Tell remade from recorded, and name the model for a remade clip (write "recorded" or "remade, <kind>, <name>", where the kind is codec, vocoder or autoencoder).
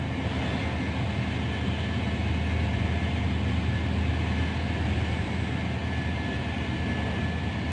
recorded